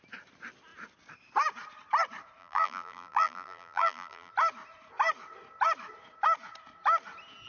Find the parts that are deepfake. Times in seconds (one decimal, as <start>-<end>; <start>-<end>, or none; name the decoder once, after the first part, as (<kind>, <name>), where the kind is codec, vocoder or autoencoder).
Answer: 2.4-4.3 (vocoder, BigVGAN v2)